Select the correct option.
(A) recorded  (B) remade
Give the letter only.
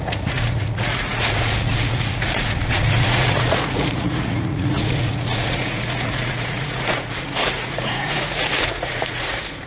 B